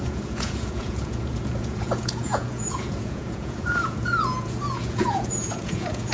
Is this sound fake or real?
fake